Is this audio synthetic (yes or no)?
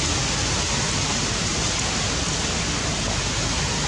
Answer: no